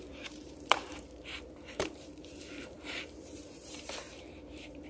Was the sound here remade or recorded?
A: remade